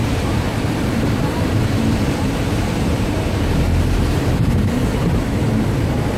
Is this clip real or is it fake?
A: fake